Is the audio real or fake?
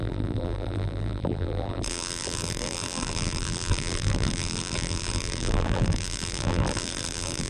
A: fake